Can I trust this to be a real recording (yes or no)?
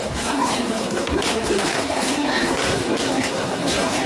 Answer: no